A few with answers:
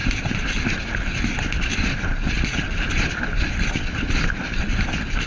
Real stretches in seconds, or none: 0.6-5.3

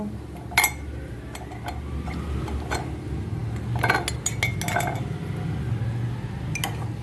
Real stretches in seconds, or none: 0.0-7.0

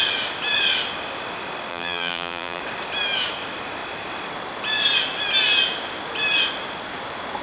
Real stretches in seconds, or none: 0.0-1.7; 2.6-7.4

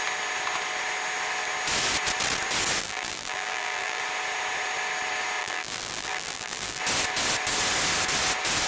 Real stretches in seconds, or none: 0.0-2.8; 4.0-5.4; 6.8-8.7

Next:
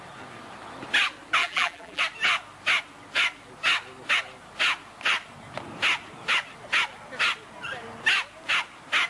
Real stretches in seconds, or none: 0.0-1.4; 2.0-9.1

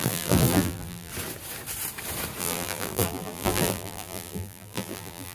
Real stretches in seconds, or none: 1.1-2.4

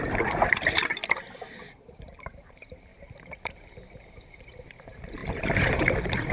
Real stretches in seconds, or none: 1.0-1.9; 2.9-3.5

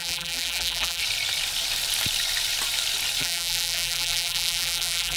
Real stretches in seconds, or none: 1.0-3.2